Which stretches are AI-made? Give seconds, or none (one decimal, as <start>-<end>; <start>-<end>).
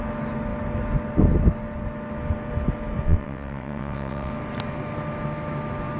3.0-4.3